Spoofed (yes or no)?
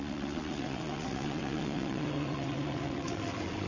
yes